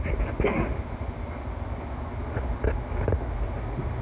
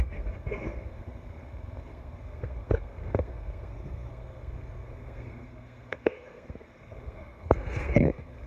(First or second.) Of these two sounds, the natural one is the first